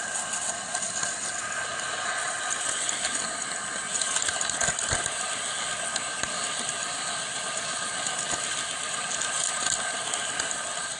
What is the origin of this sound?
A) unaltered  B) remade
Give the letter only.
A